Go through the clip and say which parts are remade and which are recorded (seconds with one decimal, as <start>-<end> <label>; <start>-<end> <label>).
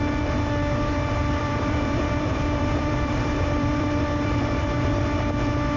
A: 0.0-1.4 recorded; 1.4-4.9 remade; 4.9-5.8 recorded